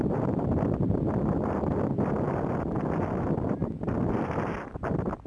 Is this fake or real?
real